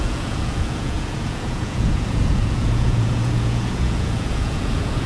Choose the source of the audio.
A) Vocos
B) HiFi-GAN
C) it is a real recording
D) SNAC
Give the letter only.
A